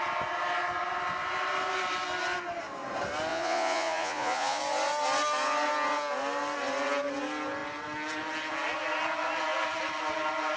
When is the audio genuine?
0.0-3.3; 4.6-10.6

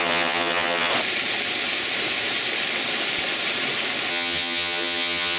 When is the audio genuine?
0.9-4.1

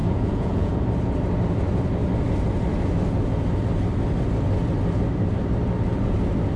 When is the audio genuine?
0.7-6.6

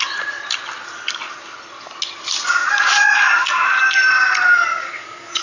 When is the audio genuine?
0.0-4.7

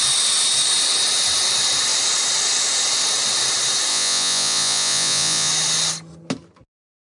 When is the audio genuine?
0.0-3.9; 5.5-7.0

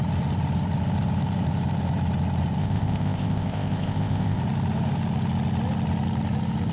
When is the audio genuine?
0.0-2.6; 4.4-6.7

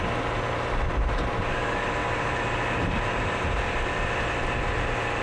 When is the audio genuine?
0.0-5.2

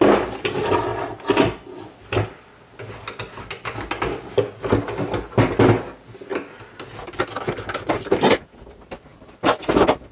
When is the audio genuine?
0.0-0.9; 2.5-6.3; 8.7-9.1; 9.7-10.1